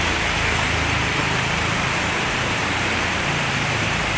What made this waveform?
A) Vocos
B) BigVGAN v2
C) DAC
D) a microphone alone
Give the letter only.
B